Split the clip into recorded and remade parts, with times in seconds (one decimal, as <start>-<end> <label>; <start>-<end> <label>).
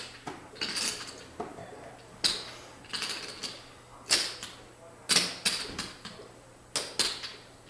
0.0-7.7 recorded